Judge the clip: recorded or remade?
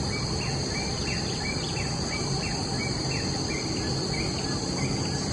recorded